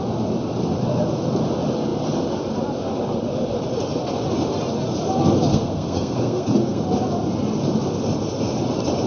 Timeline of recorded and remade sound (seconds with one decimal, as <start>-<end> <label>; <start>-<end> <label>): 0.0-5.5 recorded; 5.5-6.8 remade; 6.8-9.1 recorded